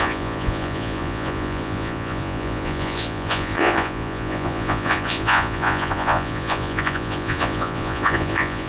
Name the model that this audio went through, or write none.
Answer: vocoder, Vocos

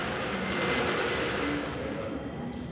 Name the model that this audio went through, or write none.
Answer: none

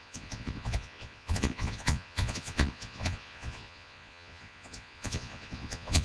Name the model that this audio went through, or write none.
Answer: vocoder, Vocos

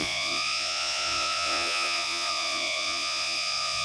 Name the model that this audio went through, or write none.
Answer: vocoder, Vocos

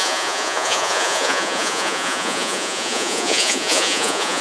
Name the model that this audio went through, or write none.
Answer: vocoder, Vocos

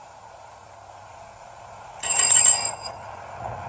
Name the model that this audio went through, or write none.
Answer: vocoder, Vocos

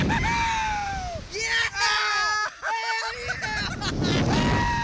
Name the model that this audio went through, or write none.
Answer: none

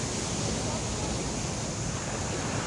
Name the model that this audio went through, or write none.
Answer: none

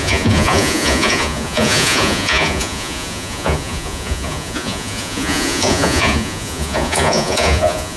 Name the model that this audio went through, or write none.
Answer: vocoder, Vocos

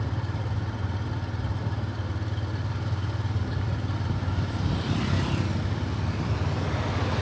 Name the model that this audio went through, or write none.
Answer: none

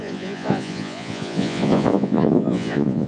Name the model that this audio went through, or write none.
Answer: vocoder, Vocos